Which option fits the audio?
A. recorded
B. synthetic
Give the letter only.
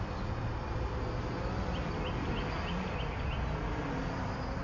A